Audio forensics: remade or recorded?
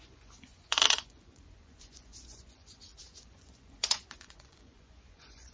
remade